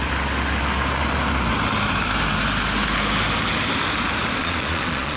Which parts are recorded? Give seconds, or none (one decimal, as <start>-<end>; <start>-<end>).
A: 0.0-4.4